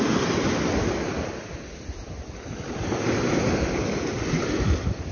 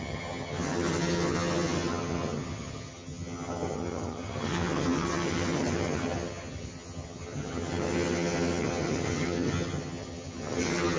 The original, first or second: first